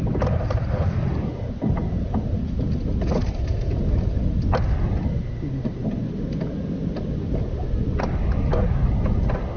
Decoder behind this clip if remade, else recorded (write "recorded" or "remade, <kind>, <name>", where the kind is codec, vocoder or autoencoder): recorded